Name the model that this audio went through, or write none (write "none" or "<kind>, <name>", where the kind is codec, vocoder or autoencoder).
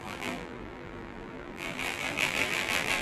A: vocoder, BigVGAN v2